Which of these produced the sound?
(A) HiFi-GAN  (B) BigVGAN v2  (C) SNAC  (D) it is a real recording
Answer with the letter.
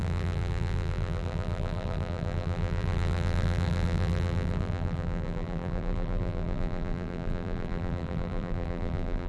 B